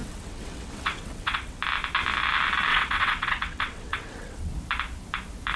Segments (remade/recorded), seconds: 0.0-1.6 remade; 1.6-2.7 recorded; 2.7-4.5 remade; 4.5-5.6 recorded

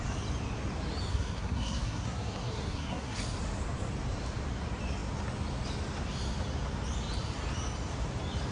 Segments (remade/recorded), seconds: 0.0-1.1 recorded; 1.1-3.2 remade; 3.2-8.5 recorded

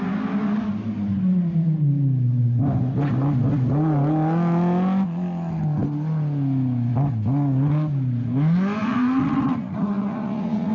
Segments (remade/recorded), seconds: 0.0-8.8 recorded; 8.8-10.7 remade

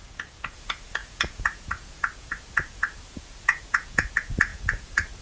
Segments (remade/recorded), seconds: 0.0-5.2 remade

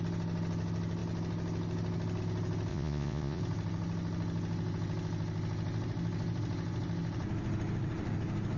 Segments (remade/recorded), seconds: 0.0-2.7 recorded; 2.7-3.4 remade; 3.4-8.6 recorded

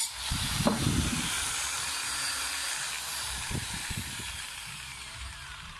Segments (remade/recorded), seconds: 0.0-2.6 remade; 2.6-3.1 recorded; 3.1-5.8 remade